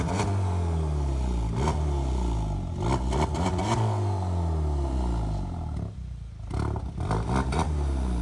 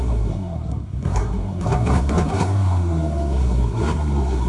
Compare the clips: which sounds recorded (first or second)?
first